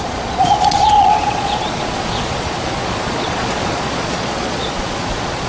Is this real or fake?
fake